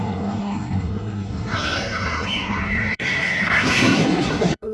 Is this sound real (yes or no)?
no